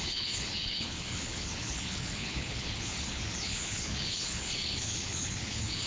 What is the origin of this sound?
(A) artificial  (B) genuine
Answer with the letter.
A